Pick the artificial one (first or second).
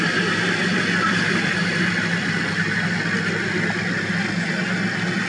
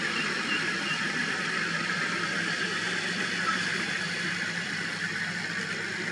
second